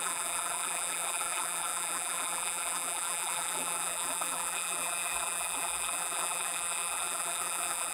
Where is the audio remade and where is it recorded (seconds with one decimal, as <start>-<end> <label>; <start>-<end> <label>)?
0.0-7.9 remade